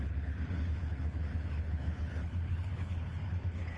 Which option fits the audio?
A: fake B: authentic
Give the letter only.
A